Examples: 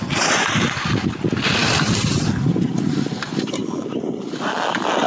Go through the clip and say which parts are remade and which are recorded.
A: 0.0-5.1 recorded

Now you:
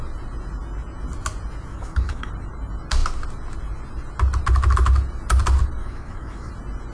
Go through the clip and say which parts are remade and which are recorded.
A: 0.0-1.7 recorded; 1.7-2.3 remade; 2.3-5.8 recorded; 5.8-6.5 remade; 6.5-6.9 recorded